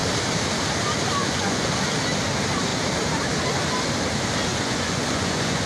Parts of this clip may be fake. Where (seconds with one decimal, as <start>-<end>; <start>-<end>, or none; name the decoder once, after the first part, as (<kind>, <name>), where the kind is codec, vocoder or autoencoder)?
1.2-1.7 (vocoder, Vocos); 4.5-5.7